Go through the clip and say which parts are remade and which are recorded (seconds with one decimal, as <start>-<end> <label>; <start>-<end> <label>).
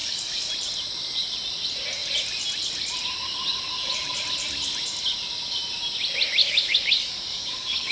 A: 0.0-0.5 remade; 0.5-6.4 recorded; 6.4-7.9 remade